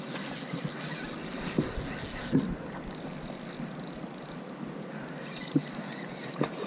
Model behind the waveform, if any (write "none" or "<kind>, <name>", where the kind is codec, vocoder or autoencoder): none